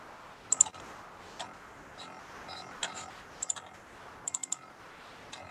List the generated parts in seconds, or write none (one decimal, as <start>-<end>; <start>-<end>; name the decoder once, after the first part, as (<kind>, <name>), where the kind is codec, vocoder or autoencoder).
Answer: 2.8-4.4 (vocoder, BigVGAN v2)